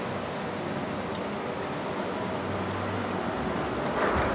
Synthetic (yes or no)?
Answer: no